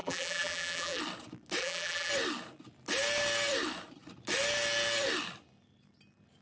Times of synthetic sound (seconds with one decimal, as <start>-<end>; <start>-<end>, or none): 0.0-1.0; 1.6-2.1